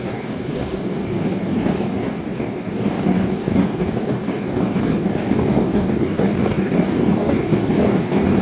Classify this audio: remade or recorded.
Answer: remade